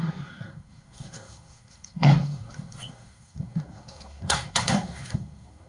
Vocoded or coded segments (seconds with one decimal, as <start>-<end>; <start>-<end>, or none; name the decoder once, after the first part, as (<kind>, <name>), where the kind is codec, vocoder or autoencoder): 0.0-5.7 (codec, SNAC)